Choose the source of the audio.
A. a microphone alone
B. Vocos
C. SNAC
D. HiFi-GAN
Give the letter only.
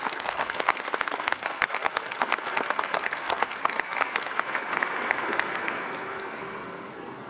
C